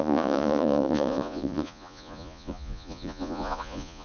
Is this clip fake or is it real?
fake